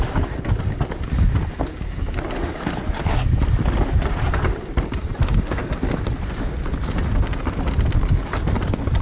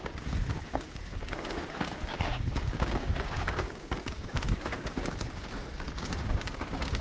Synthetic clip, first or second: second